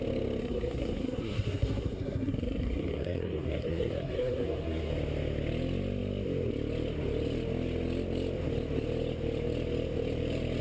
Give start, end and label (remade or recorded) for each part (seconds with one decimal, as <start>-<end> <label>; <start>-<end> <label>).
0.0-0.4 recorded; 0.4-4.9 remade; 4.9-10.6 recorded